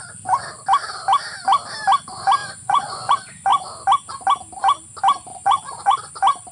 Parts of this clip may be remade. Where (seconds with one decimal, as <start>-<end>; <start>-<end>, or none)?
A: 2.4-3.1; 5.3-6.1